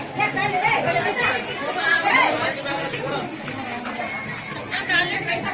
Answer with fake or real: real